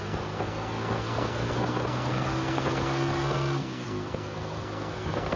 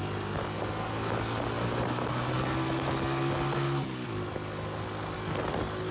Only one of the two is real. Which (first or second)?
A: second